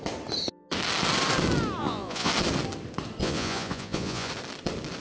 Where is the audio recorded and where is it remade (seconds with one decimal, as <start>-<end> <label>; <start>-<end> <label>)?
0.0-1.8 recorded; 1.8-2.3 remade; 2.3-3.2 recorded; 3.2-4.3 remade; 4.3-5.0 recorded